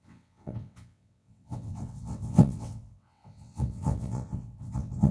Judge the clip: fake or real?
fake